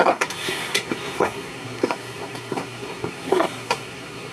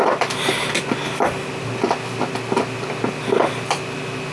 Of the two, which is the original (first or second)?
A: second